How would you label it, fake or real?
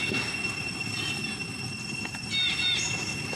real